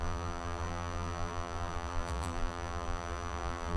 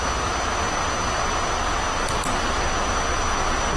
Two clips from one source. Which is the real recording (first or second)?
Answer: second